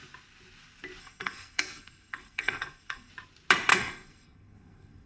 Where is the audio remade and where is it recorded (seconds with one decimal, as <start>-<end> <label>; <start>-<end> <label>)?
0.0-1.0 recorded; 1.0-3.1 remade; 3.1-3.7 recorded; 3.7-5.1 remade